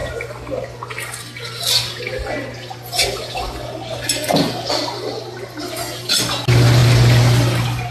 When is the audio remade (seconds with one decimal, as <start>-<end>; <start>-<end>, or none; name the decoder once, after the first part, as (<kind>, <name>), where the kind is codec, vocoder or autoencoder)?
none